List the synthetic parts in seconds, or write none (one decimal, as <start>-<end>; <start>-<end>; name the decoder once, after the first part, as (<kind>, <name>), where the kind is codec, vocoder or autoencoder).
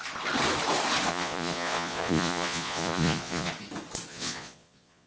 1.1-3.5 (vocoder, Vocos); 4.1-5.1